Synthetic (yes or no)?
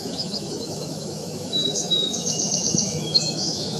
yes